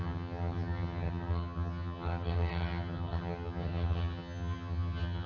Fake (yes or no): yes